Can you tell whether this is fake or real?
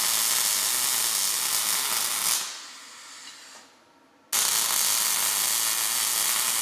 real